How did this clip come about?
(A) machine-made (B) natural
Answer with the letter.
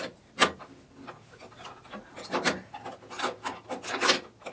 B